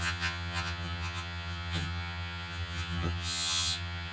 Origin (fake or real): fake